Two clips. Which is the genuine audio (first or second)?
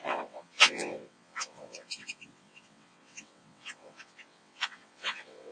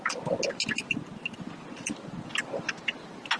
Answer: second